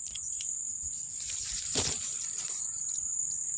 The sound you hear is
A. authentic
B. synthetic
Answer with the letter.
B